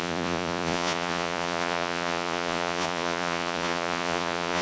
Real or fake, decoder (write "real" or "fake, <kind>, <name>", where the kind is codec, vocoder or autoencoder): fake, vocoder, Vocos